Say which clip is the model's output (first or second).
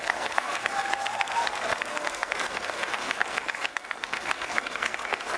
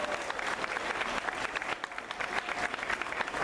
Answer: first